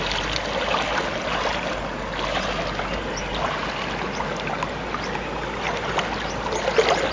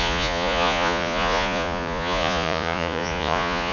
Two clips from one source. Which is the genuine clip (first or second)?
first